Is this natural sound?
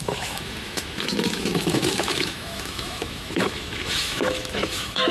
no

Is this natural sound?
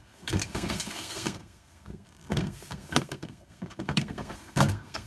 no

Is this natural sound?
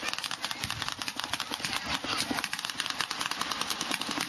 yes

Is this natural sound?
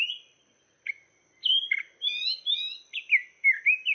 yes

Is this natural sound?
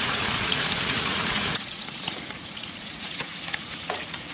no